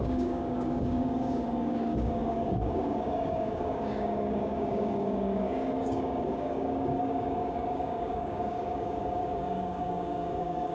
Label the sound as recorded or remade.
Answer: remade